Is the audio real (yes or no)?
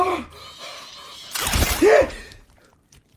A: yes